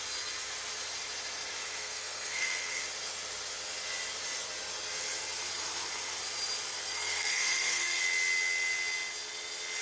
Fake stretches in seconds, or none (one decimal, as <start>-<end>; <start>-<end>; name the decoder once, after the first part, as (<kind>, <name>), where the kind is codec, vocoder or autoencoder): 1.8-2.8 (codec, SNAC); 6.8-8.0